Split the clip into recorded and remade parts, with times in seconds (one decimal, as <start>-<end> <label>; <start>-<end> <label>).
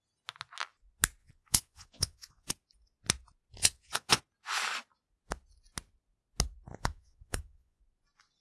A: 0.0-1.2 recorded; 1.2-2.5 remade; 2.5-3.6 recorded; 3.6-4.2 remade; 4.2-6.7 recorded; 6.7-7.8 remade; 7.8-8.4 recorded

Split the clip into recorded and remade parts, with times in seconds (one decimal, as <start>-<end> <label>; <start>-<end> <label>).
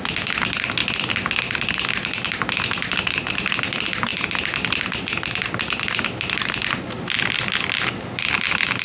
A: 0.0-8.8 recorded